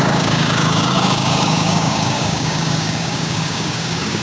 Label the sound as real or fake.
fake